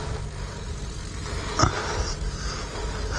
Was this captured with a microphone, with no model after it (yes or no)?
yes